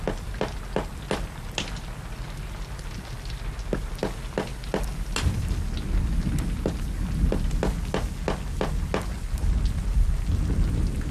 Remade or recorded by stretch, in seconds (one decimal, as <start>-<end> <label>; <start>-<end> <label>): 0.0-11.1 recorded